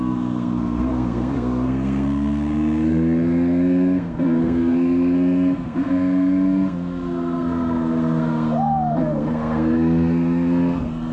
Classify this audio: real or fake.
fake